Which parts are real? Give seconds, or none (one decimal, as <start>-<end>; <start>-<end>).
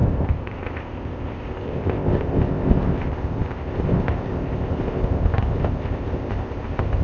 none